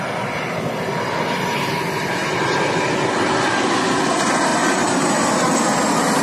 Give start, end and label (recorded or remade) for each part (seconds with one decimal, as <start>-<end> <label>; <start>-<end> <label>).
0.0-6.2 recorded